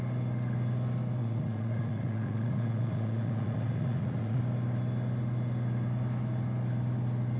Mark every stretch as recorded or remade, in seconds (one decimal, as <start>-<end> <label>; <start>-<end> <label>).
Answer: 0.0-1.2 recorded; 1.2-4.4 remade; 4.4-7.4 recorded